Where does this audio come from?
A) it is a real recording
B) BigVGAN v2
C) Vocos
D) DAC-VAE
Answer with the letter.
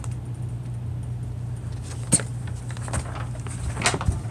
A